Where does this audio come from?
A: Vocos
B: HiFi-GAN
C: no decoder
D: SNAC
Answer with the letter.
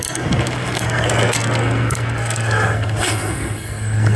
D